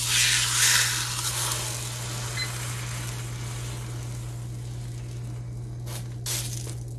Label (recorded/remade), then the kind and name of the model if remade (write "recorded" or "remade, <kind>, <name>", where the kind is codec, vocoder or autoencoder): recorded